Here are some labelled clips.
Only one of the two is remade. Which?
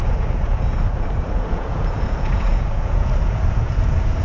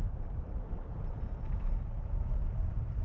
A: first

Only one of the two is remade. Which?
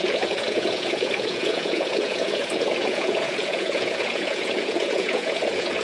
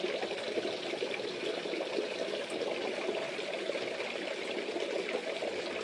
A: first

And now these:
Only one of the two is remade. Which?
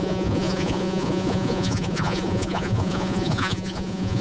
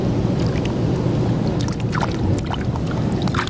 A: first